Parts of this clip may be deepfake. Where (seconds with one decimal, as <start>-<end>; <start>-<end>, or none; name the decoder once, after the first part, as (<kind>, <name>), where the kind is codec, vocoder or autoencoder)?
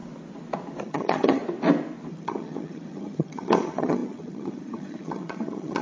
0.8-1.4 (vocoder, HiFi-GAN); 2.1-5.8